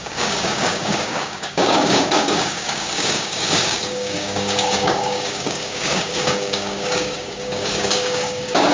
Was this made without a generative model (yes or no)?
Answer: no